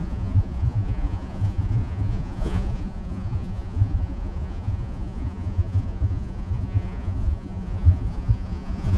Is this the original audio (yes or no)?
no